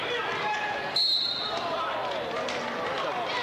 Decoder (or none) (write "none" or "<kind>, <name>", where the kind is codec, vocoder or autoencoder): none